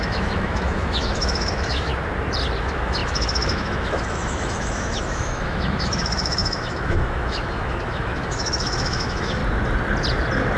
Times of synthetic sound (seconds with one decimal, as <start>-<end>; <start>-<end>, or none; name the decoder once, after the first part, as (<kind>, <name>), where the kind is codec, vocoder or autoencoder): 0.0-1.9 (autoencoder, DAC-VAE); 2.6-9.4